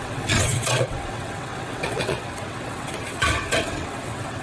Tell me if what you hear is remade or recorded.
remade